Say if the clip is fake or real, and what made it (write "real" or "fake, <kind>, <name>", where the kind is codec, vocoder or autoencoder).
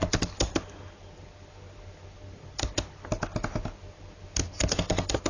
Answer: real